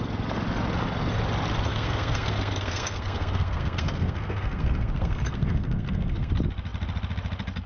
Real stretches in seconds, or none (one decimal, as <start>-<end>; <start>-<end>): 0.0-1.7; 6.3-7.7